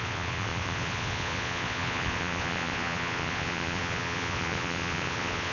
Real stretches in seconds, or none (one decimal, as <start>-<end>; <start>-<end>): none